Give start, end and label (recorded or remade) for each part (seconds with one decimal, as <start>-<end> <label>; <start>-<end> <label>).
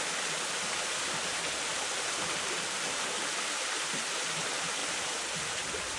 0.0-6.0 recorded